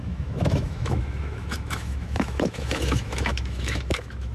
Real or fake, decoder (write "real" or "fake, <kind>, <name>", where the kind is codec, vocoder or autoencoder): fake, autoencoder, DAC-VAE